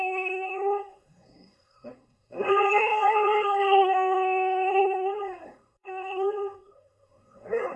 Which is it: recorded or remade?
remade